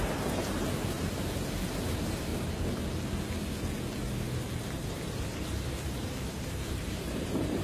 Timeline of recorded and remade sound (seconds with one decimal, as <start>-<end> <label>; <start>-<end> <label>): 0.0-2.3 remade; 2.3-5.1 recorded; 5.1-7.6 remade